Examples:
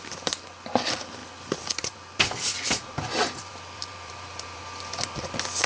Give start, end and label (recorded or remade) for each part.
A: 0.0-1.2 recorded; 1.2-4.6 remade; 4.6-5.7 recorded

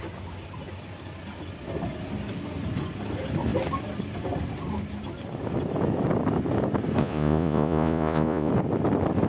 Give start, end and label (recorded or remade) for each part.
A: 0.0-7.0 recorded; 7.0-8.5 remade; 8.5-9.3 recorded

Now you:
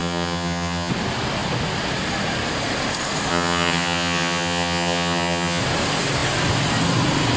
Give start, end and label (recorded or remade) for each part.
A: 0.0-0.9 remade; 0.9-3.3 recorded; 3.3-5.6 remade; 5.6-7.4 recorded

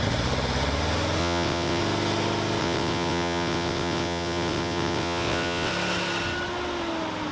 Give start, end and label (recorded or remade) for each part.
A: 0.0-1.2 recorded; 1.2-1.8 remade; 1.8-2.6 recorded; 2.6-5.7 remade; 5.7-7.3 recorded

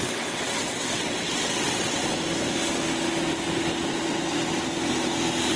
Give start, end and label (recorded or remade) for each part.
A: 0.0-2.0 remade; 2.0-5.6 recorded

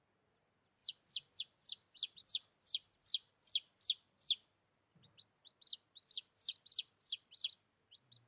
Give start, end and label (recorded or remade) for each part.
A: 0.0-8.3 recorded

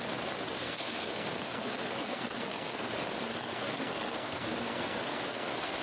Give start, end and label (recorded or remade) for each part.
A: 0.0-0.6 recorded; 0.6-2.9 remade; 2.9-3.3 recorded; 3.3-5.8 remade